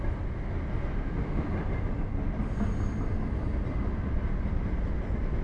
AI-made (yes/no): no